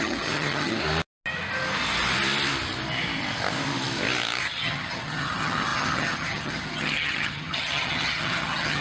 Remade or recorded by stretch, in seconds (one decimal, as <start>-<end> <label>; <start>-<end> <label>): 0.0-0.7 remade; 0.7-4.4 recorded; 4.4-8.8 remade